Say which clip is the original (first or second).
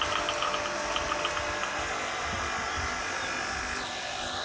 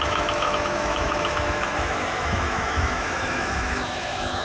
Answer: first